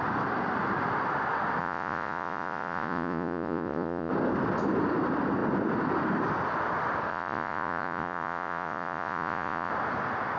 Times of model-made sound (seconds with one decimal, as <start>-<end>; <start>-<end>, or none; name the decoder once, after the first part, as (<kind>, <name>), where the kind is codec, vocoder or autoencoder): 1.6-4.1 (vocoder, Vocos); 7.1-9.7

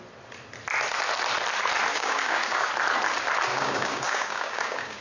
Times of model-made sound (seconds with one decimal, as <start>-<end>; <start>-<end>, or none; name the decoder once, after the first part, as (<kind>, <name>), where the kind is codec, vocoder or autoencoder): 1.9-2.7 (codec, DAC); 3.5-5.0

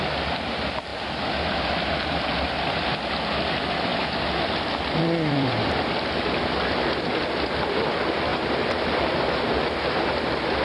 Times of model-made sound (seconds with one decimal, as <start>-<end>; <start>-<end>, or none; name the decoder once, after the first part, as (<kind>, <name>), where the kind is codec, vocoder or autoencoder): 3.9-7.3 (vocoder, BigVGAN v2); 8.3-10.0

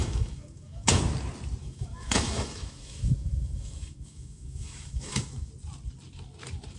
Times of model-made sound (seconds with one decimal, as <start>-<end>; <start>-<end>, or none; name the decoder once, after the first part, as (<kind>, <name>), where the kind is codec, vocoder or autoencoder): 0.0-1.0 (autoencoder, DAC-VAE); 1.6-5.5

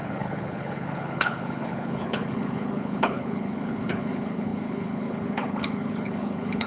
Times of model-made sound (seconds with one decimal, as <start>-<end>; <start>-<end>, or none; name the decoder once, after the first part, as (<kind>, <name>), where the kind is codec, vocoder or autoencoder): 0.0-6.7 (codec, HILCodec)

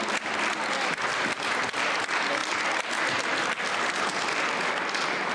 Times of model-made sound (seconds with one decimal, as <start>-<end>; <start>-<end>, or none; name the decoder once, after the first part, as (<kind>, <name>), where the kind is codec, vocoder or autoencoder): none

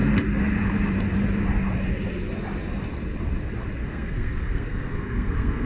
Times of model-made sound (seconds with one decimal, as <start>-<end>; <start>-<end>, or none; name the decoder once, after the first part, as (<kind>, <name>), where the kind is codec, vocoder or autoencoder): 3.8-5.7 (codec, SNAC)

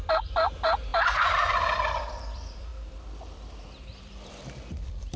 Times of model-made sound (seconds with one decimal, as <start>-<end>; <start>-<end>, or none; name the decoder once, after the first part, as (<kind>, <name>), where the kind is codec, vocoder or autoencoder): 0.0-2.7 (vocoder, BigVGAN v2); 3.5-5.2